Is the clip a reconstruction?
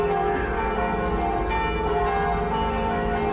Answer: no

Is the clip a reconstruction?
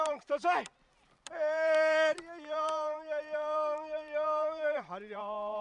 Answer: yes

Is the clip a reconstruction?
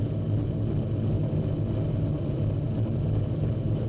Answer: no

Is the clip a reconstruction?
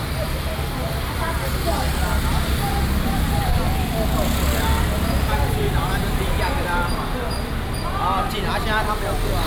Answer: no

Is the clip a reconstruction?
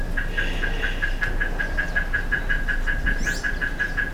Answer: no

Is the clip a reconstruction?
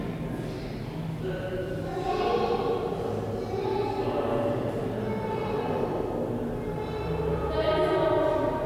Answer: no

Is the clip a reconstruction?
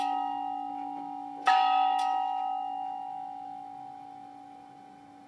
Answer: yes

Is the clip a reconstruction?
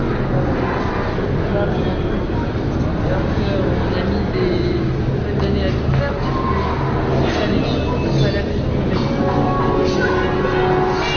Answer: no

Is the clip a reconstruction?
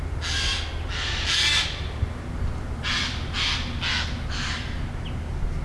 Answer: no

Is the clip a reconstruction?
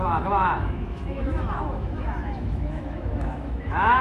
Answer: yes